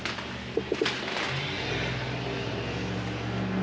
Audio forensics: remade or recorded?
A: recorded